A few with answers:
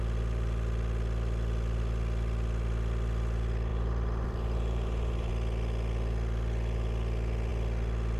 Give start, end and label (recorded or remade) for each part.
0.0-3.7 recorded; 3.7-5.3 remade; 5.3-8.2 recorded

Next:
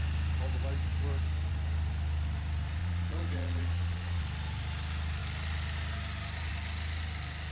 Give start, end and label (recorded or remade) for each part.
0.0-2.8 recorded; 2.8-4.2 remade; 4.2-7.5 recorded

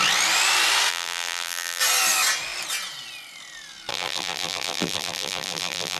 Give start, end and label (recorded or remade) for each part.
0.0-0.9 recorded; 0.9-1.8 remade; 1.8-3.9 recorded; 3.9-6.0 remade